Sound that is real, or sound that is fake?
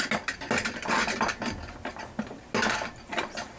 real